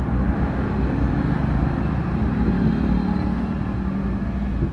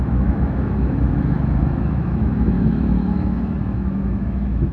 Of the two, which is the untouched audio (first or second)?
first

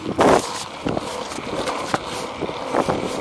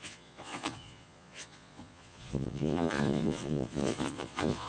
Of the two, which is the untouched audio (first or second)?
first